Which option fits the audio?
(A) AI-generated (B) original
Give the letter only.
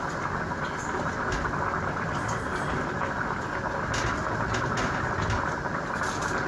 B